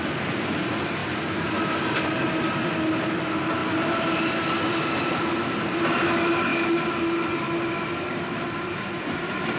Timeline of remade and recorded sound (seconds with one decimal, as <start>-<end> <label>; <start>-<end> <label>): 0.0-9.6 recorded